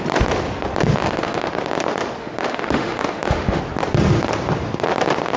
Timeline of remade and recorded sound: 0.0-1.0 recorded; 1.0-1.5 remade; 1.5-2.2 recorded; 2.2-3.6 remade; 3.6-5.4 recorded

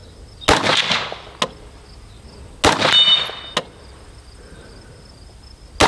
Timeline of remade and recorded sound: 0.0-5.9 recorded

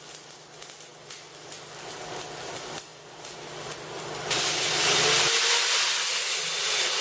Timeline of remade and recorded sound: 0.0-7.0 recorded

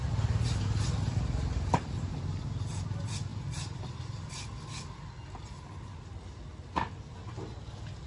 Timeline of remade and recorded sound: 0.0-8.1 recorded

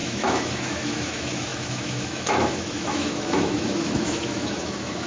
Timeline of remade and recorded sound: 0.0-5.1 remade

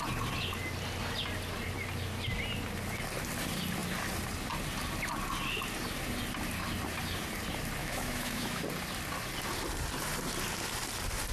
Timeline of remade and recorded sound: 0.0-7.8 recorded; 7.8-8.6 remade; 8.6-11.3 recorded